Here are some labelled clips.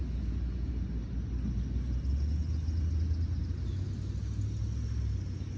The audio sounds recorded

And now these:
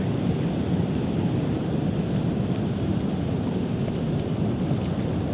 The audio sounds recorded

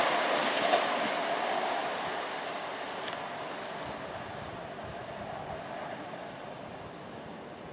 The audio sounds recorded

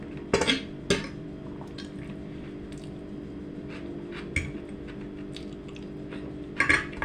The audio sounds recorded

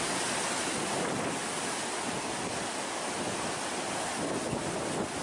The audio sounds recorded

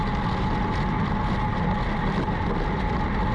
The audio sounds recorded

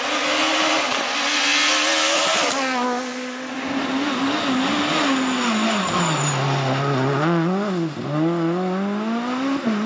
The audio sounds recorded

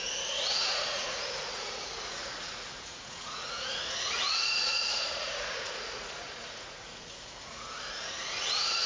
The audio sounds remade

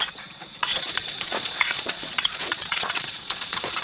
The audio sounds remade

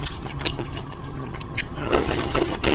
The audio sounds remade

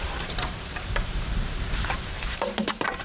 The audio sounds remade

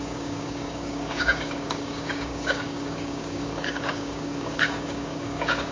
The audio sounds remade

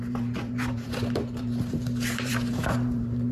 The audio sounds remade